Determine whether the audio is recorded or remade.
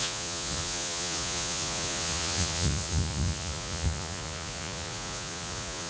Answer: remade